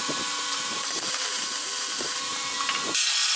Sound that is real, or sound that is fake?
fake